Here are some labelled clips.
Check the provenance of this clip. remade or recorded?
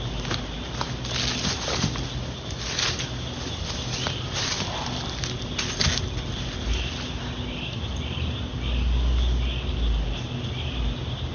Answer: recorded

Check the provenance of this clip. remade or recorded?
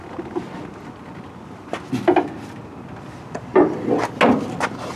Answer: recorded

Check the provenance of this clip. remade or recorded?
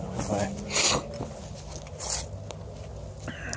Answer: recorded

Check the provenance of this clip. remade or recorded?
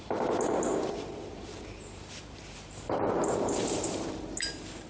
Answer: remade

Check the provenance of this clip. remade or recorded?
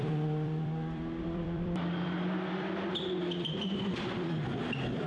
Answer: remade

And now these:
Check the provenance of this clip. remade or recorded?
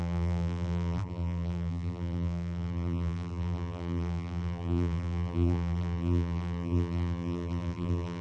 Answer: remade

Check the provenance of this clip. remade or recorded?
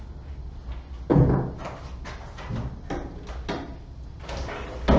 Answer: recorded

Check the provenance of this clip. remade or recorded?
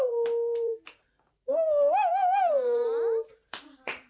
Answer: remade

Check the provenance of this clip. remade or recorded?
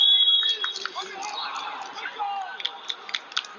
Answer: recorded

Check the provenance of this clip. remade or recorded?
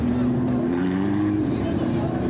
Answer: remade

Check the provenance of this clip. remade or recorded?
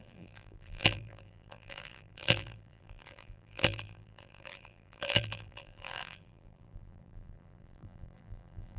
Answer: remade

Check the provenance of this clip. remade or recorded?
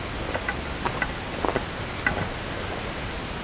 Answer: recorded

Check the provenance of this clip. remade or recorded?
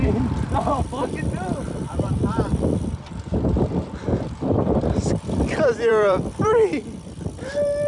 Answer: remade